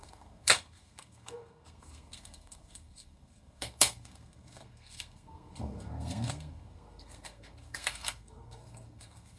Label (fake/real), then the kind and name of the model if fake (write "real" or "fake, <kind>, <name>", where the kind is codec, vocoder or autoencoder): fake, codec, SNAC